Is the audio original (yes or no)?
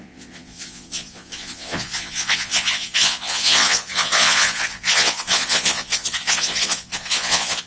no